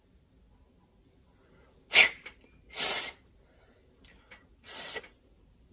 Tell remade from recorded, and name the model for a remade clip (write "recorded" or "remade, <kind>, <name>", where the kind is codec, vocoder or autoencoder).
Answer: recorded